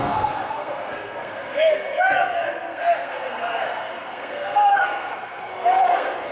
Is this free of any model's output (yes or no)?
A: no